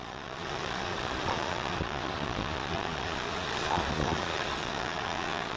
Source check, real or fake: fake